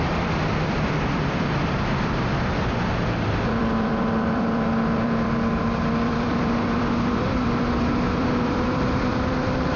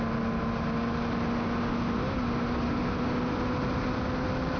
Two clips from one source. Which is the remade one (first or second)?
first